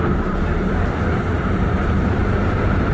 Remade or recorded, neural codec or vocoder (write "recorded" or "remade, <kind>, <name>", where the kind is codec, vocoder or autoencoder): remade, vocoder, BigVGAN v2